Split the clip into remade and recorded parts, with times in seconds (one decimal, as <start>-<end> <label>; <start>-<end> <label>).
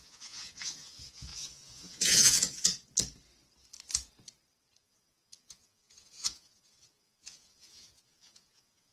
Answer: 0.0-2.7 remade; 2.7-4.8 recorded; 4.8-8.9 remade